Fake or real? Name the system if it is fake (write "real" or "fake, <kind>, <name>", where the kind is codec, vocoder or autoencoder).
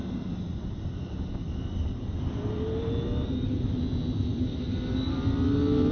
real